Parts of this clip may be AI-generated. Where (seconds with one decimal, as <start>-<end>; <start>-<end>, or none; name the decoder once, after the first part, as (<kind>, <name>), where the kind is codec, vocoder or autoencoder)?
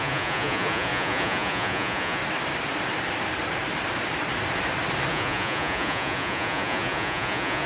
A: 0.0-2.2 (vocoder, Vocos); 5.1-7.7